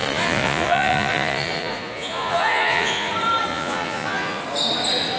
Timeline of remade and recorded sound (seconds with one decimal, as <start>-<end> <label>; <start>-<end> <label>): 0.0-3.1 remade; 3.1-3.5 recorded; 3.5-4.4 remade; 4.4-5.2 recorded